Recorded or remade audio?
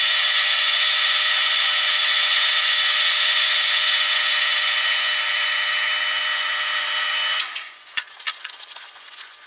remade